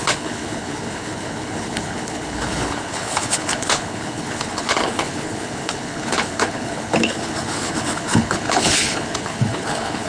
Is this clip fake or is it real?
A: fake